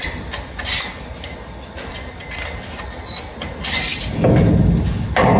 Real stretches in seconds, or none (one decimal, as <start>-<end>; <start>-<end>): 0.0-5.4